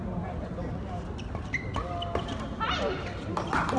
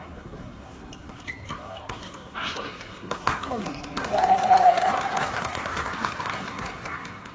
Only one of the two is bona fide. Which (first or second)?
first